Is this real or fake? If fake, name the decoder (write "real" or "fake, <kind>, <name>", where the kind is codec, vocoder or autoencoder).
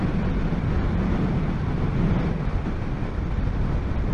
real